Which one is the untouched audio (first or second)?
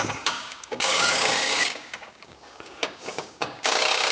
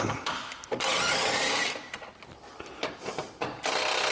second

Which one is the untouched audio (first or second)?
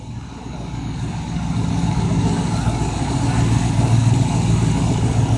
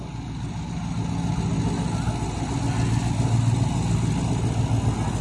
second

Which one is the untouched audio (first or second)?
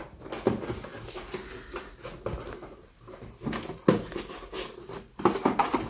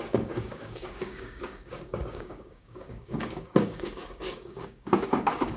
first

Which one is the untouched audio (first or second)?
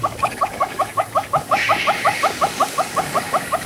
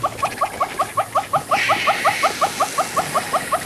second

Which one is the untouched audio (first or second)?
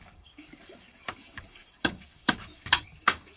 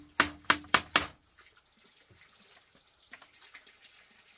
second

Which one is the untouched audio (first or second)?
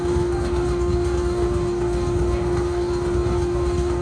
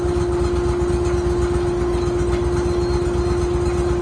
second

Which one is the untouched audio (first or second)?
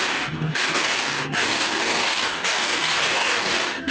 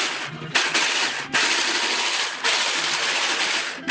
second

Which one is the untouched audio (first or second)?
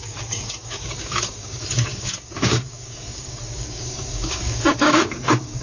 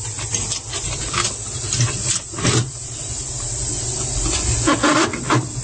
second